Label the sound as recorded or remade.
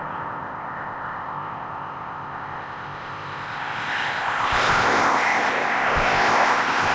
remade